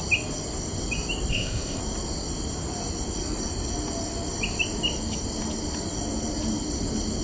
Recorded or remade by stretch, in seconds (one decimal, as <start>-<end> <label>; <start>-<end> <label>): 0.0-1.3 recorded; 1.3-1.8 remade; 1.8-7.2 recorded